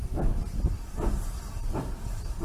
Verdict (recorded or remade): recorded